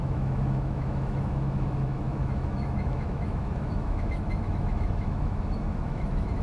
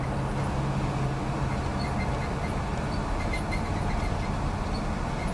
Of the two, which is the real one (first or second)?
second